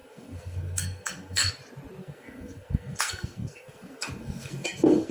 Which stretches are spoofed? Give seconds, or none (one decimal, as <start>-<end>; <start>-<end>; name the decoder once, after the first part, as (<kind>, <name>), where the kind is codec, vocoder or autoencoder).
0.0-1.5 (codec, SNAC); 2.0-5.1

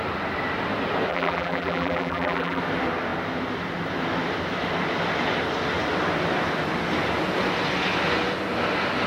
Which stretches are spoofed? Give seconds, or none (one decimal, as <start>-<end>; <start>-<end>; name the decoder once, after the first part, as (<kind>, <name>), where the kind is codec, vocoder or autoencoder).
1.1-2.6 (vocoder, BigVGAN v2)

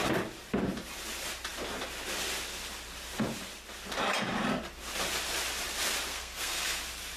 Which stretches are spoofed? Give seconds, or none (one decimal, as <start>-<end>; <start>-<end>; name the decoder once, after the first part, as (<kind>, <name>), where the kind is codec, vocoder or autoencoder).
6.1-6.8 (codec, SNAC)